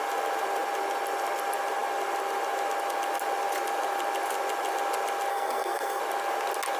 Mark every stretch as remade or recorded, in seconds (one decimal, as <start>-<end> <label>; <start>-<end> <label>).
0.0-5.3 recorded; 5.3-6.0 remade; 6.0-6.8 recorded